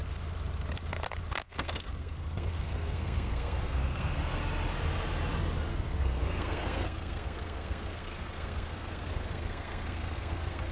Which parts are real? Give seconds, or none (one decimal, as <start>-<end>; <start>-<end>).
0.0-1.3; 4.4-5.7